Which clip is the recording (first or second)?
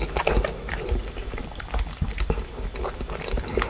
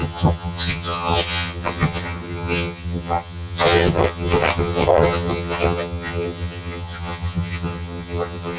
first